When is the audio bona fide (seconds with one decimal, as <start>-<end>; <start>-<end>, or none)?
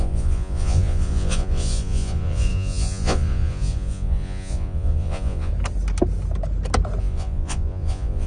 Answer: 5.5-7.0